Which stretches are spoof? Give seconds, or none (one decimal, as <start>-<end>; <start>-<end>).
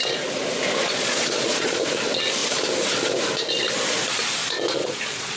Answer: 0.8-1.8; 4.4-5.4